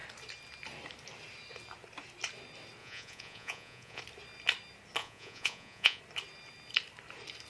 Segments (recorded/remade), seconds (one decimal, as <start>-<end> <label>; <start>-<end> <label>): 0.0-2.8 recorded; 2.8-4.0 remade; 4.0-5.0 recorded; 5.0-6.0 remade; 6.0-7.5 recorded